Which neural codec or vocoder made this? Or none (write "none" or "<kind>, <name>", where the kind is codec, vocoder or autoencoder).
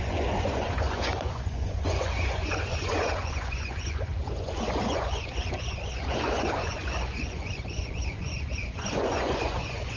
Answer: vocoder, Vocos